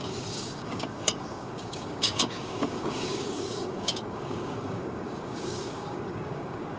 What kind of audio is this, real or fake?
fake